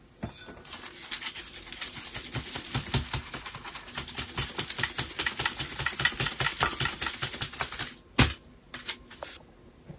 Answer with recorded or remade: recorded